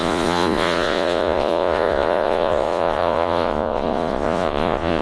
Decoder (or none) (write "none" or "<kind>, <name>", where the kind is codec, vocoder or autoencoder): vocoder, Vocos